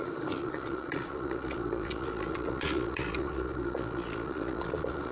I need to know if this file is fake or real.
fake